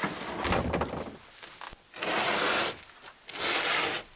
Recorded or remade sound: recorded